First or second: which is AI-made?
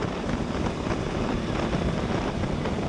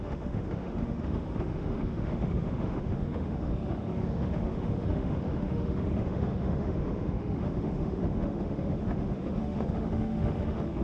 second